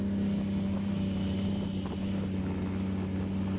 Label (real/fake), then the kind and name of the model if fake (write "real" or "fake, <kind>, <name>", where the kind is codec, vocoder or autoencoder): real